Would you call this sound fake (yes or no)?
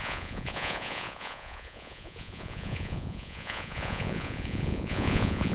yes